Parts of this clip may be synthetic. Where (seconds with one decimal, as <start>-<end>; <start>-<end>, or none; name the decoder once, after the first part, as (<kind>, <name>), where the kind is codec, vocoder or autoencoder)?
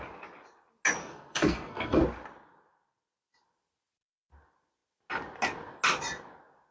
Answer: 1.0-2.0 (codec, SNAC)